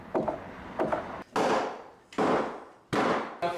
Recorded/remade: recorded